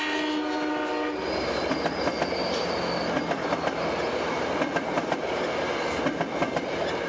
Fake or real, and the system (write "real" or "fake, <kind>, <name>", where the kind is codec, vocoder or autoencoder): real